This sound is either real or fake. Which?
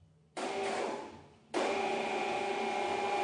real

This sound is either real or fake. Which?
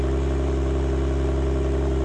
real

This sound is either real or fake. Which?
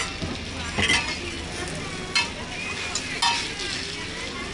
real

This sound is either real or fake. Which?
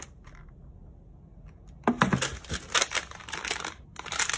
real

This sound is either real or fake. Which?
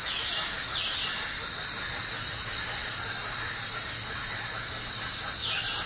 real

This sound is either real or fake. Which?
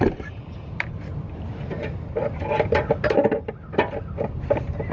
real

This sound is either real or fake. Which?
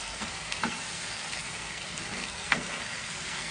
fake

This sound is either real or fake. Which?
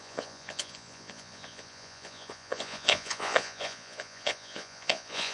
fake